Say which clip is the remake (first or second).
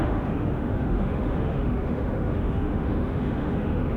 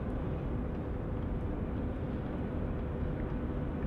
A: first